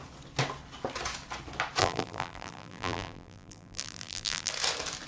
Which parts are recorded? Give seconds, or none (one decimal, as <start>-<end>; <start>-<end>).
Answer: 0.0-1.8; 4.5-5.1